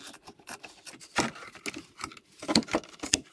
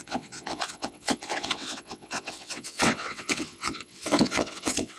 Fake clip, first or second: second